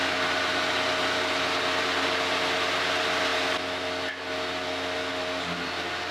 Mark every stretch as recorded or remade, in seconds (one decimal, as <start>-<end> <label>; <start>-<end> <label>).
0.0-6.1 recorded

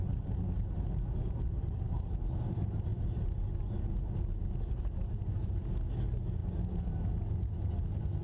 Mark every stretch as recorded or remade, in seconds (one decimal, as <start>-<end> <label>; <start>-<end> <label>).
0.0-8.2 recorded

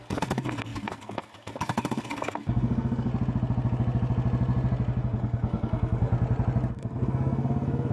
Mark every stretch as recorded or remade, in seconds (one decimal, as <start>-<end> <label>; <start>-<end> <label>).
0.0-3.1 remade; 3.1-5.0 recorded; 5.0-6.1 remade; 6.1-6.7 recorded; 6.7-7.9 remade